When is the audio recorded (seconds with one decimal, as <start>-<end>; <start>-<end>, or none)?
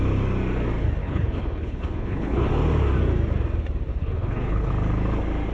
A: 0.0-1.0; 2.5-3.9; 4.7-5.5